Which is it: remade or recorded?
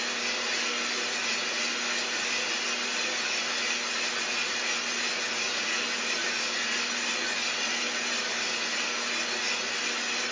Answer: recorded